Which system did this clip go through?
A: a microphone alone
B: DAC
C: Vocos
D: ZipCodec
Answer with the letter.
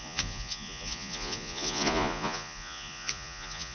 C